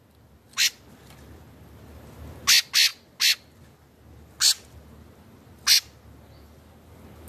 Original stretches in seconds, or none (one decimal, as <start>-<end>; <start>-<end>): 0.0-7.3